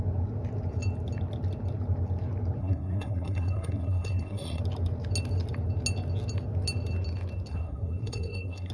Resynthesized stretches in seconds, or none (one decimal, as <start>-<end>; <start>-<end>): 2.6-4.6; 7.5-8.7